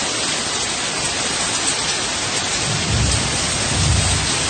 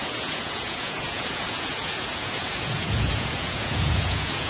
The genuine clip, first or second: first